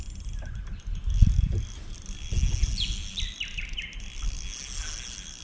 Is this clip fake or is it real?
real